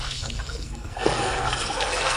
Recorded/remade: remade